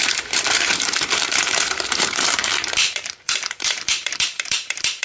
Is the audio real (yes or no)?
no